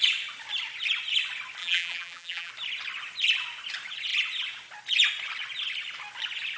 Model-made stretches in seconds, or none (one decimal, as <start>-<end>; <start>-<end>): 1.6-2.5